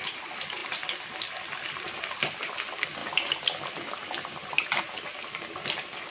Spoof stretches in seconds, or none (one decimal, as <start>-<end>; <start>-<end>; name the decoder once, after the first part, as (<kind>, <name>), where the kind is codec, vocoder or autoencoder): none